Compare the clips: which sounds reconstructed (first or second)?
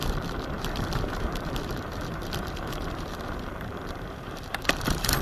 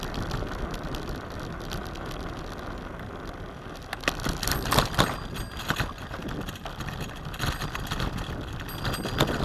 first